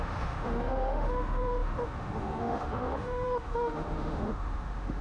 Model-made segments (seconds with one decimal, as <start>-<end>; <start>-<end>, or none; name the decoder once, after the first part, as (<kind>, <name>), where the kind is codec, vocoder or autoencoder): 0.0-5.0 (autoencoder, DAC-VAE)